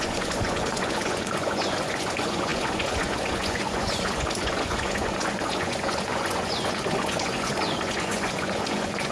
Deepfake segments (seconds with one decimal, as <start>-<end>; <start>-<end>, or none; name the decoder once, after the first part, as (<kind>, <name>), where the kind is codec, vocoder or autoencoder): 0.0-9.1 (vocoder, Vocos)